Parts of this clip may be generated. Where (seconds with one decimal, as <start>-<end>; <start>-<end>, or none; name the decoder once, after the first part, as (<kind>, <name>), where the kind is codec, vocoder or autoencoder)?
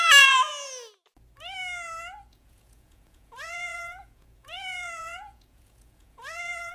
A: 0.0-0.5 (vocoder, Vocos); 2.3-6.7